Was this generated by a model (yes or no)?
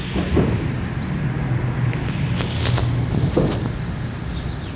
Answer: no